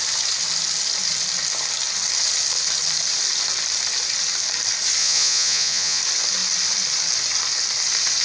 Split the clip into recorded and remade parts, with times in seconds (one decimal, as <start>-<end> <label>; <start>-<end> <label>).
0.0-5.0 recorded; 5.0-6.0 remade; 6.0-8.2 recorded